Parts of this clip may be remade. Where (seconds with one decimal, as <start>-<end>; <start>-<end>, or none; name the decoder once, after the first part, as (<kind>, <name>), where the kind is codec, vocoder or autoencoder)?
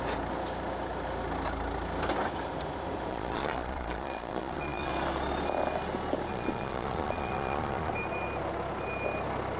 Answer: 3.1-4.9 (vocoder, Vocos); 6.3-7.9